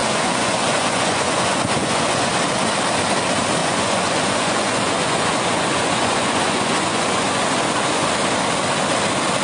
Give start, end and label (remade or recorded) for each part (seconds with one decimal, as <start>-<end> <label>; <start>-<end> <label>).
0.0-2.3 remade; 2.3-3.6 recorded; 3.6-8.1 remade; 8.1-9.4 recorded